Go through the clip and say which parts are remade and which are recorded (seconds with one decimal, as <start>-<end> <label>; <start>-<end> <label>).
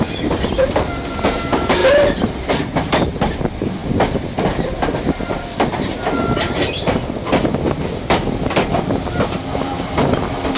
0.0-10.6 recorded